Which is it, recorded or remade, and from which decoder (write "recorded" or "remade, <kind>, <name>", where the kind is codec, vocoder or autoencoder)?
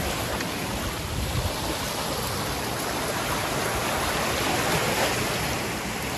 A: recorded